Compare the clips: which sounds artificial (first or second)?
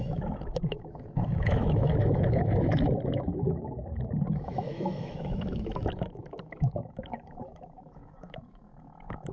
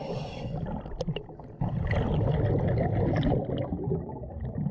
first